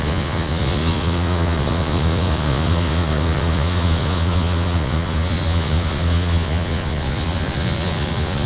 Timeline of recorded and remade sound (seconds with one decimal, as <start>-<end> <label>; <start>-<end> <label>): 0.0-8.5 remade